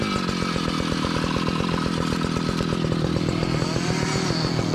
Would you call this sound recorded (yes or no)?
yes